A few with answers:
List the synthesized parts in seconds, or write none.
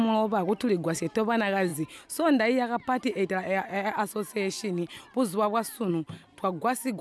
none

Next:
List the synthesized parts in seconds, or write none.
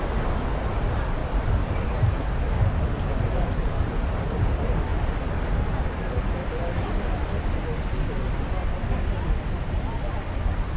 1.2-1.9 (vocoder, BigVGAN v2); 4.9-5.9; 6.4-7.6; 8.6-10.3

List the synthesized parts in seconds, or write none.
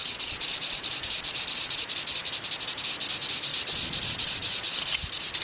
0.0-2.2 (vocoder, Vocos); 3.5-4.8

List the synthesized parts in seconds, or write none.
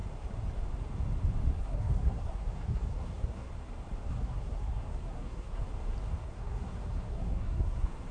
1.5-3.5 (codec, SNAC); 4.1-5.6; 6.2-8.1